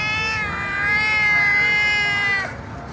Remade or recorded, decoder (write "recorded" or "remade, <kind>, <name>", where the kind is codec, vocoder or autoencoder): recorded